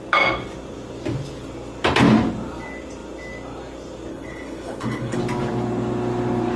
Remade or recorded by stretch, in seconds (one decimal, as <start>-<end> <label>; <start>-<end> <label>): 0.0-4.1 recorded; 4.1-5.2 remade; 5.2-6.6 recorded